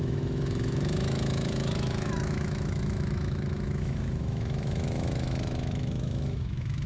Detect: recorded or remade remade